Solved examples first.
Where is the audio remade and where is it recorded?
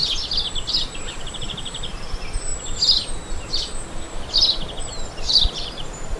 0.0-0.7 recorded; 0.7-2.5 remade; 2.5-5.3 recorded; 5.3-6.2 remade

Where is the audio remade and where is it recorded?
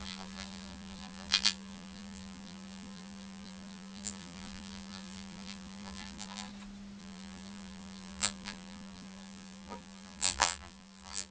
0.0-6.5 remade; 6.5-7.0 recorded; 7.0-11.3 remade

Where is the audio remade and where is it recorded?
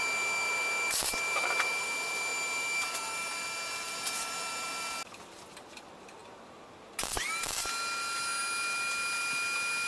0.0-9.9 recorded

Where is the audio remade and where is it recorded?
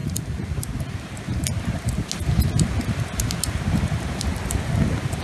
0.0-0.6 remade; 0.6-5.2 recorded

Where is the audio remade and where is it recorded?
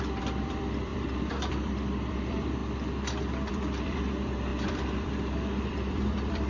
0.0-2.6 remade; 2.6-3.5 recorded; 3.5-6.5 remade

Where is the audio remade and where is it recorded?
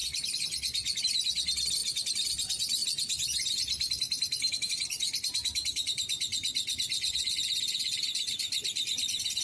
0.0-1.0 remade; 1.0-1.8 recorded; 1.8-2.3 remade; 2.3-2.8 recorded; 2.8-8.0 remade; 8.0-9.4 recorded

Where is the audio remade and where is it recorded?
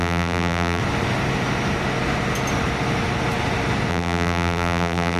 0.0-0.8 remade; 0.8-3.9 recorded; 3.9-5.2 remade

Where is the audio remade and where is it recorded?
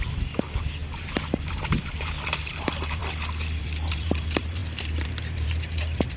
0.0-3.0 remade; 3.0-3.6 recorded; 3.6-6.2 remade